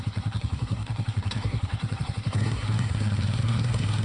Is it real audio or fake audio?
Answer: fake